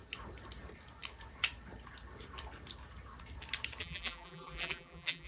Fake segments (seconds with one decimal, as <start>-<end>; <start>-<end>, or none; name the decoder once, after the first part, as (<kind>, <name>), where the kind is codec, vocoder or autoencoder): 3.8-5.3 (vocoder, BigVGAN v2)